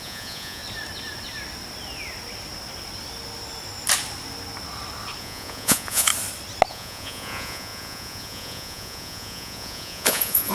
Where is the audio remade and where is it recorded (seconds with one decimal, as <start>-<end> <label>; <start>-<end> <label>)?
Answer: 0.0-0.6 remade; 0.6-5.2 recorded; 5.2-6.1 remade; 6.1-6.7 recorded; 6.7-10.5 remade